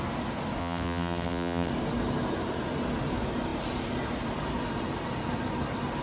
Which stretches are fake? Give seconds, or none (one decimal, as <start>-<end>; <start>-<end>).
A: 0.6-1.7